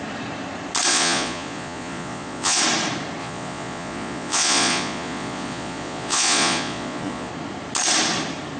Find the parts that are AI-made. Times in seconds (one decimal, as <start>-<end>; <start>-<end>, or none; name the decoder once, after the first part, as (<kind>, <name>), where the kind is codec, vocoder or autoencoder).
0.9-2.6 (vocoder, Vocos); 3.2-7.3